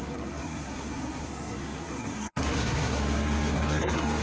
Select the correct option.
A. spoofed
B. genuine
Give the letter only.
A